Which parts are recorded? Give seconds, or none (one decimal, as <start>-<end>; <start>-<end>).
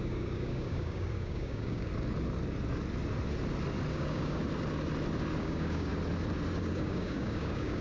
1.9-3.9; 4.4-5.4; 5.9-6.6